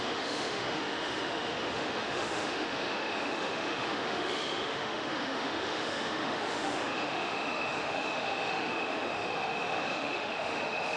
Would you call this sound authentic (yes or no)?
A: no